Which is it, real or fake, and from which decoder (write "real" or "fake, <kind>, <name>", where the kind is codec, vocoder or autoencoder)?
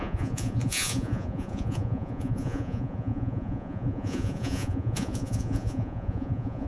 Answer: fake, vocoder, Vocos